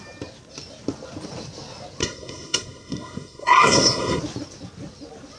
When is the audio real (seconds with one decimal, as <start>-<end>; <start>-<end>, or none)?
0.0-2.0; 4.2-5.4